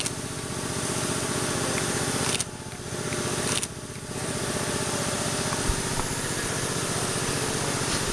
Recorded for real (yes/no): yes